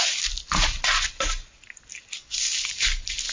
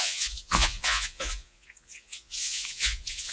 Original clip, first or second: first